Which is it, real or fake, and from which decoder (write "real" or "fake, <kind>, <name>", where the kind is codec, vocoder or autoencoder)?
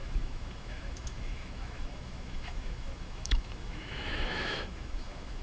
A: fake, autoencoder, DAC-VAE